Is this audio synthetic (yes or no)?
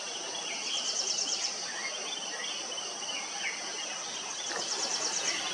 no